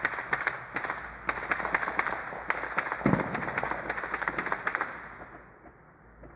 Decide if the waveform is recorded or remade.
recorded